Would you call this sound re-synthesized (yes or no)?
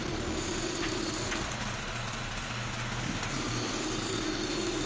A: no